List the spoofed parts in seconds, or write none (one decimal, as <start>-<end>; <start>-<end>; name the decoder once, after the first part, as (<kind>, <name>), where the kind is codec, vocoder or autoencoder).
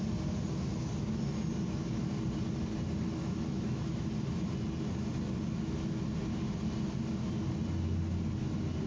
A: 3.2-4.0 (autoencoder, DAC-VAE)